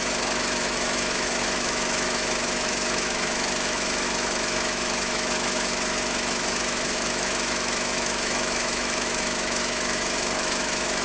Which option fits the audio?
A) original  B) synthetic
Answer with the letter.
B